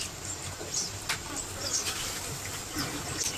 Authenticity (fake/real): real